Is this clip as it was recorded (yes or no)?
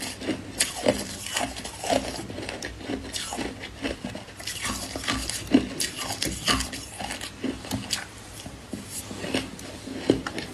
no